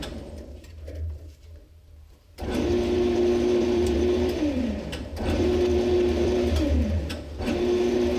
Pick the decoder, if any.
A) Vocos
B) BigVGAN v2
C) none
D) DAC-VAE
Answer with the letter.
B